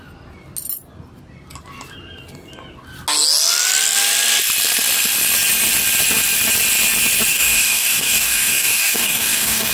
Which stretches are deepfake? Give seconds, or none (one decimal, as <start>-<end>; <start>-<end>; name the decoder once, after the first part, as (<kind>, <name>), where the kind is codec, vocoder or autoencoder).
7.3-9.7 (codec, DAC)